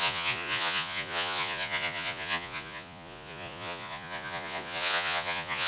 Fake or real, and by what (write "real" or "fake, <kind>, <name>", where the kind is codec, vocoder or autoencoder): fake, vocoder, Vocos